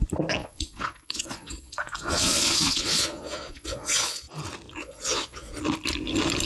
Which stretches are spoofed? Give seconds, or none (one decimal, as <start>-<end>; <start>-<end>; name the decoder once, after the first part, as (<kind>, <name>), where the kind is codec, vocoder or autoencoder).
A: 0.4-4.3 (vocoder, Vocos); 4.8-5.5